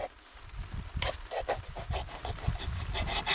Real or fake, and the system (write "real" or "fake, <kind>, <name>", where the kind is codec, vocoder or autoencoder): real